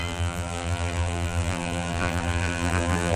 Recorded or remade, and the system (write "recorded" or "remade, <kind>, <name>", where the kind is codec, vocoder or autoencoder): remade, vocoder, BigVGAN v2